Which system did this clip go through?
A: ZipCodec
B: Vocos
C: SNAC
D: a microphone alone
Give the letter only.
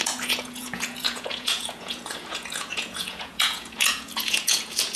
B